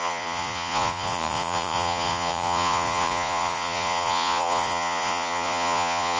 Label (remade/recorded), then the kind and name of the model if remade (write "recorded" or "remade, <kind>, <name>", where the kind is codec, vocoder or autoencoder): remade, vocoder, Vocos